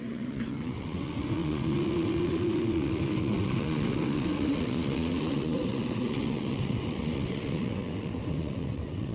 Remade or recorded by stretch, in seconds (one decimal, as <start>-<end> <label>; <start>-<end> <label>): 0.0-9.1 remade